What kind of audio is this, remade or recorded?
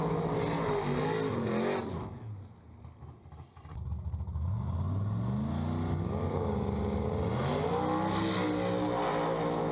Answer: recorded